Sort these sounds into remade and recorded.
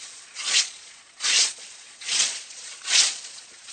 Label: remade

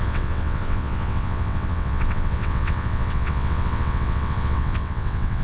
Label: remade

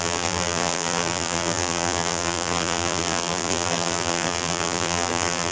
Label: remade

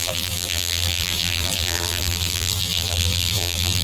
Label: remade